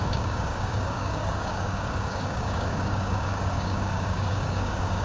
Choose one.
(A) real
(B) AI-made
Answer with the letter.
B